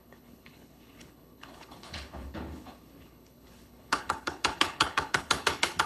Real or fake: fake